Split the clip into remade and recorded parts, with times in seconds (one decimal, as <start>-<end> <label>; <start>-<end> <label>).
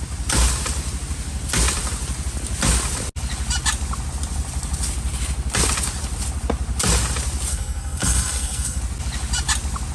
0.0-7.5 recorded; 7.5-8.8 remade; 8.8-9.9 recorded